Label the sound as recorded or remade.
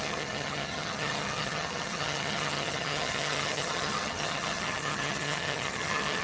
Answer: remade